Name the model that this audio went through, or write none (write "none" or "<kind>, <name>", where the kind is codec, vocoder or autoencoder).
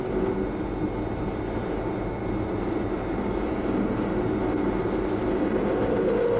none